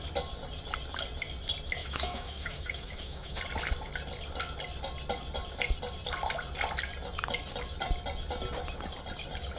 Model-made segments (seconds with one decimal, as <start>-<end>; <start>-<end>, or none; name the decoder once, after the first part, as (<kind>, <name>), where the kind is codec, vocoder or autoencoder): 1.8-3.4 (autoencoder, DAC-VAE)